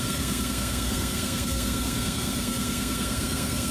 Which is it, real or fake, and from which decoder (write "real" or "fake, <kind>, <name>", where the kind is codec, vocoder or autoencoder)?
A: fake, codec, SNAC